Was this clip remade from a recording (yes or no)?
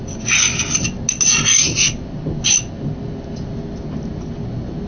no